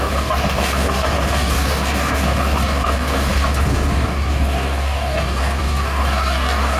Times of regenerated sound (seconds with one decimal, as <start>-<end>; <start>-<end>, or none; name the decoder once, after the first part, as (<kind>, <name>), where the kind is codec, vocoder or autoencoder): 0.0-6.8 (codec, DAC)